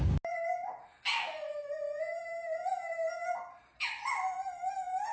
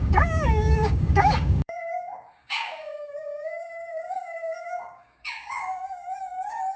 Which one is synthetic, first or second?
second